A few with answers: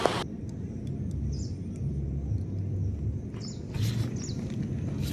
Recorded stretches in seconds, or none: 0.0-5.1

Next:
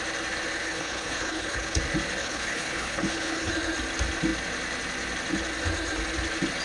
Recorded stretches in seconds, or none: 0.0-0.6; 1.8-2.2; 3.5-6.6

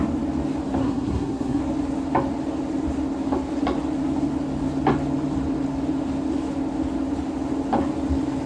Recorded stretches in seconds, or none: 0.0-0.8; 1.6-8.5

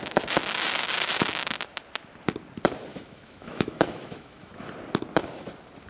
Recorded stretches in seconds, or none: 0.0-2.9; 4.6-5.9

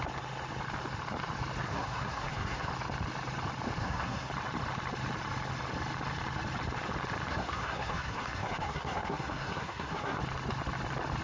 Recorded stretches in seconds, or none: 0.0-1.6; 2.7-3.8; 4.3-7.3; 10.2-11.2

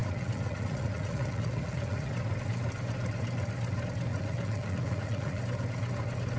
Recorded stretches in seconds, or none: 2.1-4.1; 5.4-6.4

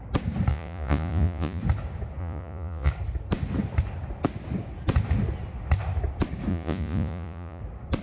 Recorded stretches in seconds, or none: 0.0-0.5; 1.6-2.2; 2.9-6.5; 7.6-8.0

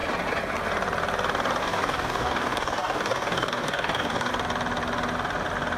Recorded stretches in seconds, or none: 0.0-1.6; 4.3-5.8